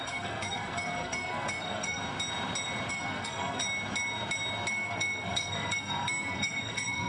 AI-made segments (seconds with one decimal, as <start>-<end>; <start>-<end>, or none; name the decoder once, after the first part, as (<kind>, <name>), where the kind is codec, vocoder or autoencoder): 0.0-2.0 (codec, SNAC); 2.9-3.6; 4.7-7.1